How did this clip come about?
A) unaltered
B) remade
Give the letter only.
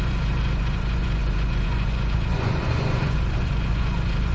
B